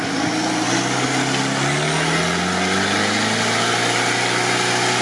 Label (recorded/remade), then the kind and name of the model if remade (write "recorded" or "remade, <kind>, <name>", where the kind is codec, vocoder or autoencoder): recorded